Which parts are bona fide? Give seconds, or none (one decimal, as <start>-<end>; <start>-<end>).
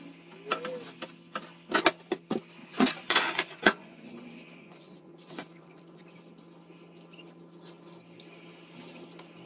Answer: 0.0-2.6; 6.0-9.5